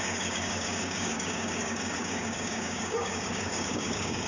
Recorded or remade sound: remade